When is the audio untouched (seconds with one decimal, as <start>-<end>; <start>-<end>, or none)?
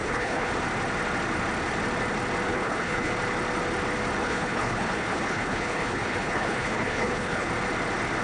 0.5-2.5; 3.1-4.2; 7.5-8.2